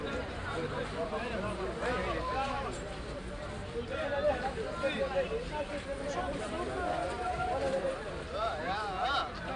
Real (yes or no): yes